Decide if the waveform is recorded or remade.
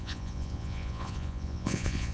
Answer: remade